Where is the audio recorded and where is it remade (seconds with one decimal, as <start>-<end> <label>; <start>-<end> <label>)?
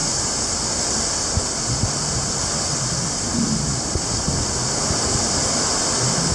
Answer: 0.0-6.3 recorded